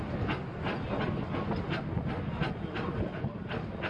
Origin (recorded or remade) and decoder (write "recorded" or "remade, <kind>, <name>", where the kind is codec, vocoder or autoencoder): recorded